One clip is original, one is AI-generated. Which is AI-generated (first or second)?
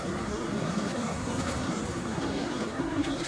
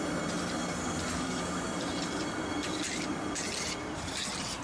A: first